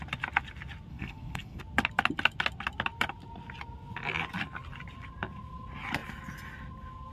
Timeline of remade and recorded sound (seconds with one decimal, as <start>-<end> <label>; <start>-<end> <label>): 0.0-0.9 recorded; 0.9-1.6 remade; 1.6-7.1 recorded